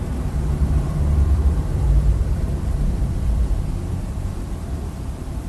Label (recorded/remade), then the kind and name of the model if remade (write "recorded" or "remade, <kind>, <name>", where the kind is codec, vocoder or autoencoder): remade, vocoder, BigVGAN v2